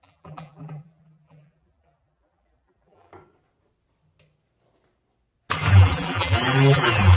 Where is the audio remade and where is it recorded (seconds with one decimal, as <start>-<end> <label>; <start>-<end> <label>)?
0.0-3.1 remade; 3.1-5.7 recorded; 5.7-7.2 remade